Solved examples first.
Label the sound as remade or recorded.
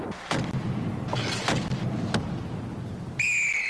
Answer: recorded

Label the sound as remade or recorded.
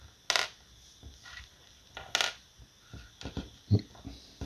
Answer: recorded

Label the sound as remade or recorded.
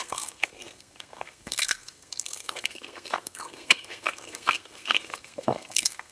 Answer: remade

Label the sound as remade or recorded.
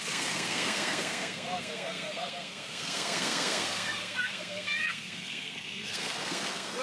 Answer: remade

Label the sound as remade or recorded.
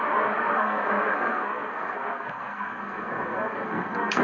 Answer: remade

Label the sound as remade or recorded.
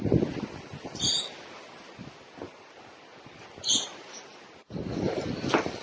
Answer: recorded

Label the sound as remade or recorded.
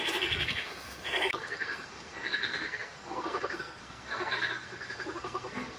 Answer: remade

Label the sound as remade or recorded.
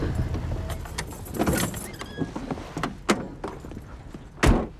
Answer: recorded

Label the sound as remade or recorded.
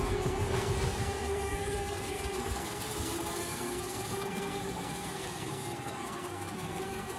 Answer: remade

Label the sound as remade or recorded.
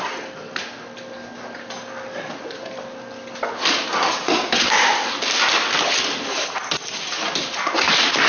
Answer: recorded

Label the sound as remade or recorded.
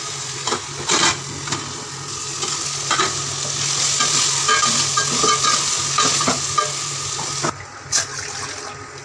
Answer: recorded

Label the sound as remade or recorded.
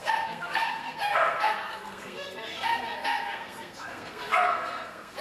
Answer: remade